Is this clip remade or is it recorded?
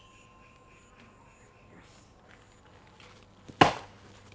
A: recorded